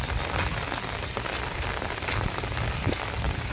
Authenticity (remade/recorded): recorded